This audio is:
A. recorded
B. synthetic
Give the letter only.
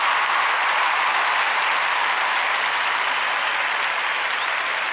A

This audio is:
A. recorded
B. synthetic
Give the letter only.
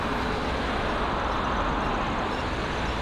A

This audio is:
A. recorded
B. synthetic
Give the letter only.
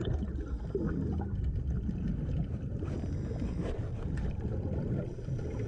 A